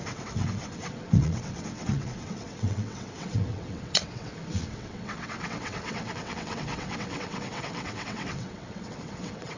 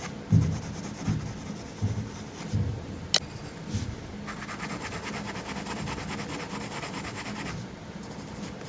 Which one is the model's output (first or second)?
first